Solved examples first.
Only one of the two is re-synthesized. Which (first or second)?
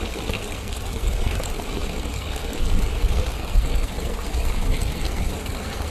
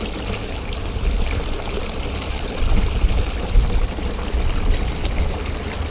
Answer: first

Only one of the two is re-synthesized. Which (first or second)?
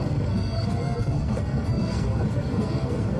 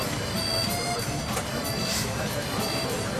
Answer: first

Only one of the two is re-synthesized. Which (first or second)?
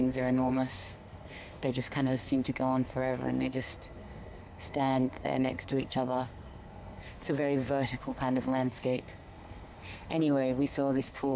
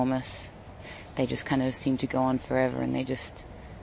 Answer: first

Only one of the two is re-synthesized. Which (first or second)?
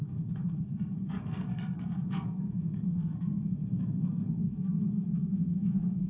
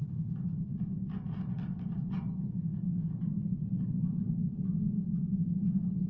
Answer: first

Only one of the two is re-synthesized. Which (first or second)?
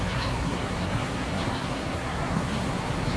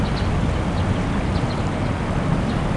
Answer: first